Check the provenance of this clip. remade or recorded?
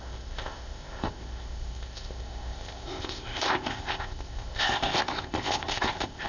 remade